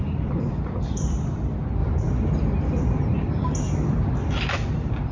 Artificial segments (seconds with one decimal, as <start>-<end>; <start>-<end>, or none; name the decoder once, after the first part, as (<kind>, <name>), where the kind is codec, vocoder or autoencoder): 0.0-1.8 (vocoder, BigVGAN v2); 4.5-5.1